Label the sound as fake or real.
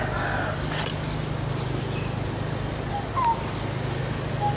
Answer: real